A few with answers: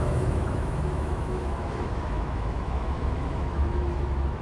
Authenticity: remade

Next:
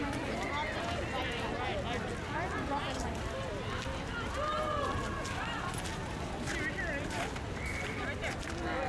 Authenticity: recorded